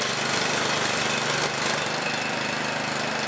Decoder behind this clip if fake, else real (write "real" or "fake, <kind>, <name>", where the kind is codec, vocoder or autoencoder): fake, vocoder, BigVGAN v2